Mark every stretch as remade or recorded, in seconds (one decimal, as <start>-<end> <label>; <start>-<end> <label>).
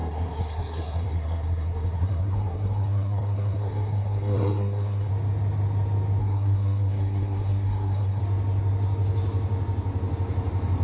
0.0-5.1 remade; 5.1-6.2 recorded; 6.2-8.2 remade; 8.2-10.8 recorded